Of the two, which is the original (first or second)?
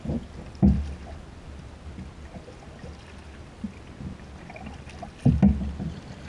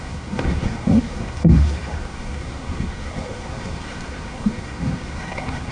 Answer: first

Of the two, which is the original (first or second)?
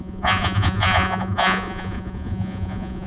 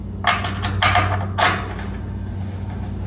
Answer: second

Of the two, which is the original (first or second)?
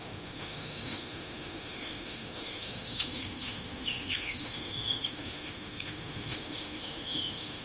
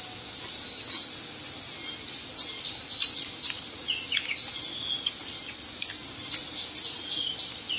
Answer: second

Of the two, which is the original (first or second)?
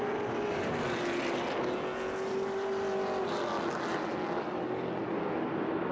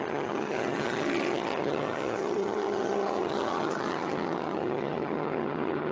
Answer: first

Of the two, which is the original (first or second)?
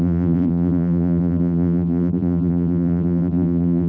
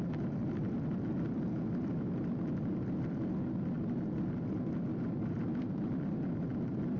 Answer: second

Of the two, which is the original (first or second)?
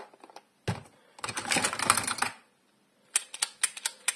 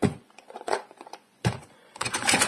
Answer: first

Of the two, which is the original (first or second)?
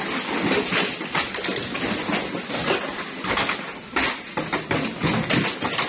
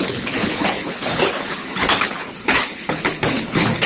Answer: first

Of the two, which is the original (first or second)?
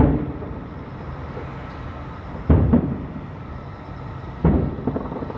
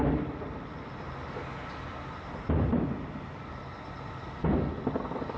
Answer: second